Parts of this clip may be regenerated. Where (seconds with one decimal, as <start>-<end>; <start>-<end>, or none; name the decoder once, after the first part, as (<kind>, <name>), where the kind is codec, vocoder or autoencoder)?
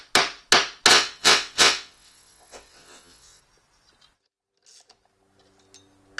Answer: 0.9-3.4 (vocoder, WaveNeXt)